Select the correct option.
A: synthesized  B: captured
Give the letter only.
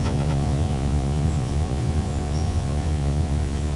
A